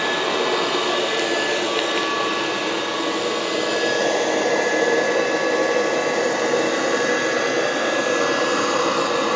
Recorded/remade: recorded